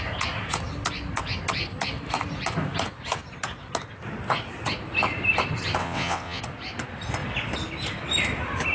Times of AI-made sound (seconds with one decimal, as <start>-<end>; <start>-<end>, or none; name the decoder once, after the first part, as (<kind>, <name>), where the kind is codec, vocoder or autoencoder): 5.8-6.4 (vocoder, WaveNeXt)